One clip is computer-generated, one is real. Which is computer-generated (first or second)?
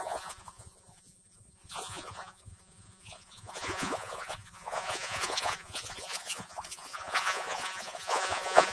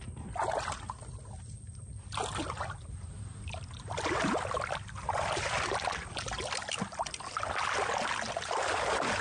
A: first